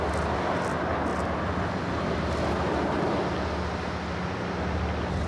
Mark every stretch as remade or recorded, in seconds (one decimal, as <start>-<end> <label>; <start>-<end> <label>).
0.0-5.3 recorded